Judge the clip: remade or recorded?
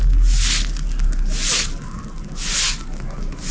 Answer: recorded